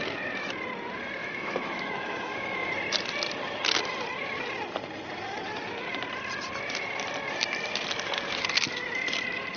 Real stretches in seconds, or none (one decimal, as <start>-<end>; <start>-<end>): 0.0-1.2; 2.7-9.6